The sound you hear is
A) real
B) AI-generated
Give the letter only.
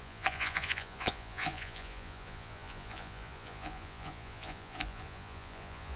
B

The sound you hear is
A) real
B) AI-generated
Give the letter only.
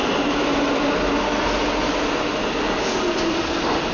A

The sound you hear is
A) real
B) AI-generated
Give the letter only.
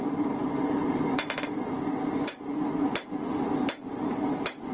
A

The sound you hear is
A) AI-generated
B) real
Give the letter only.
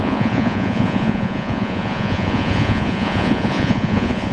A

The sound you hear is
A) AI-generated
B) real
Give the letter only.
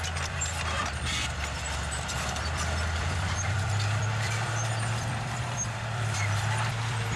A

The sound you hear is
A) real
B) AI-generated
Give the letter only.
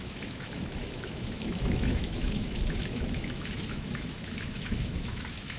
B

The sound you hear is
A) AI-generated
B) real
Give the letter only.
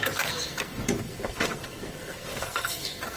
A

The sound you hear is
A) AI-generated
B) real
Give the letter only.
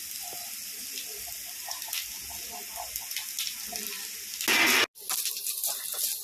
B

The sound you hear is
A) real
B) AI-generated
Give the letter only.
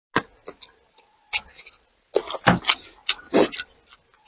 A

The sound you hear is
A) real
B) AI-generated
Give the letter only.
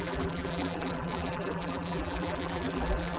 B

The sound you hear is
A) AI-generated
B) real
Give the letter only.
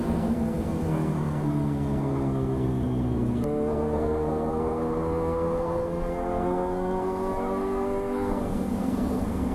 A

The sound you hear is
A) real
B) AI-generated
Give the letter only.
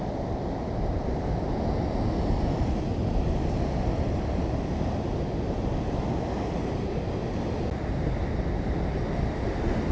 A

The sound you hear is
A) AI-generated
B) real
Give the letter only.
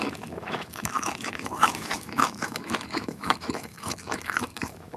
A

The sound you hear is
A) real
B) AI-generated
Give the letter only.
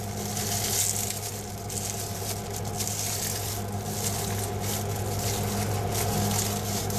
A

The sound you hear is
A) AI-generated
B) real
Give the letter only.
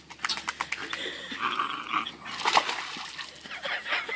B